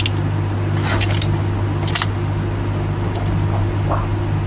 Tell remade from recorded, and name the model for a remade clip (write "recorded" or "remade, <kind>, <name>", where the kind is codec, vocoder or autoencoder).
recorded